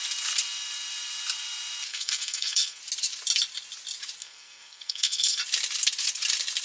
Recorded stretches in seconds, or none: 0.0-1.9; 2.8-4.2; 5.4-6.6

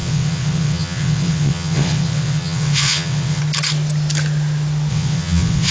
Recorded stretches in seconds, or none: 3.4-4.9